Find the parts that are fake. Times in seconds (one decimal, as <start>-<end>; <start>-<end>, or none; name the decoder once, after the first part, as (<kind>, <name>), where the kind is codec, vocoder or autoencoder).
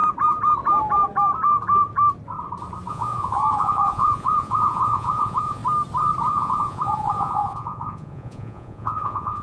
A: 2.9-5.6 (vocoder, Vocos); 6.3-9.4